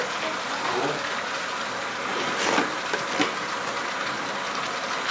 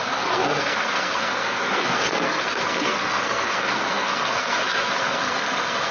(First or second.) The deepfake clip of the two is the second